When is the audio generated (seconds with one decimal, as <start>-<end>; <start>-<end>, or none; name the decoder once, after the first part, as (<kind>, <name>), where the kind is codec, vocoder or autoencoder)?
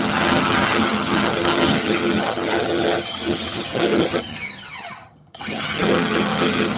0.0-6.8 (vocoder, HiFi-GAN)